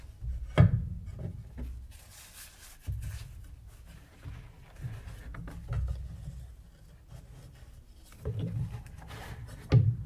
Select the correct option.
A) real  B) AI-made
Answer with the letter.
A